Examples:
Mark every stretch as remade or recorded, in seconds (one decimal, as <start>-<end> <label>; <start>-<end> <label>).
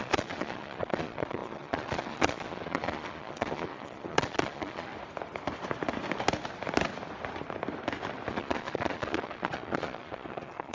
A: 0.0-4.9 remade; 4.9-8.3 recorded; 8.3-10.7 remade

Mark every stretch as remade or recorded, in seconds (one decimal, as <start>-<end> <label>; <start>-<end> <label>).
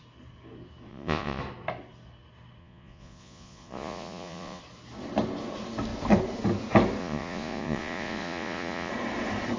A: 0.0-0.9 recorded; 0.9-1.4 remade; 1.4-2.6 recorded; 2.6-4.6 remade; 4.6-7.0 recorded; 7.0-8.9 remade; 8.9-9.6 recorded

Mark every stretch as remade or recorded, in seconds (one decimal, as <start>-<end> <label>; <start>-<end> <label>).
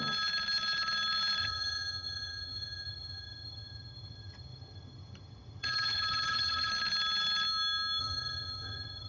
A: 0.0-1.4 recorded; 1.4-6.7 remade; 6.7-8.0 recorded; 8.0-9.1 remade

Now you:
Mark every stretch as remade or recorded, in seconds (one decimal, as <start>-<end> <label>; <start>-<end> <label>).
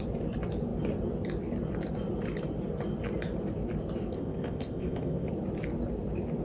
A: 0.0-4.1 recorded; 4.1-5.3 remade; 5.3-6.4 recorded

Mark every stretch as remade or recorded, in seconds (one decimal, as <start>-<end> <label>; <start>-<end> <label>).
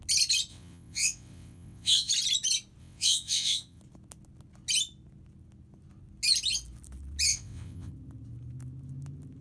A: 0.0-0.5 recorded; 0.5-2.1 remade; 2.1-2.8 recorded; 2.8-3.8 remade; 3.8-7.3 recorded; 7.3-7.9 remade; 7.9-9.4 recorded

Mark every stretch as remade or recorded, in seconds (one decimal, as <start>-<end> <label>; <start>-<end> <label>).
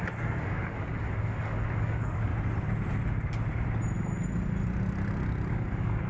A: 0.0-2.3 remade; 2.3-5.5 recorded; 5.5-6.1 remade